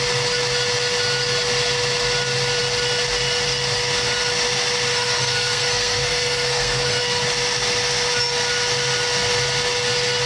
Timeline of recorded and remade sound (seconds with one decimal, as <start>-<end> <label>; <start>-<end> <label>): 0.0-4.9 recorded; 4.9-7.0 remade; 7.0-10.3 recorded